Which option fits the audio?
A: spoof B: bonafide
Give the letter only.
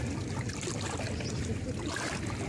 B